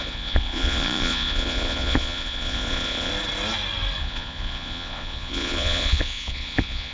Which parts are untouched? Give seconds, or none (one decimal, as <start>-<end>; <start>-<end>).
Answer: 3.1-4.0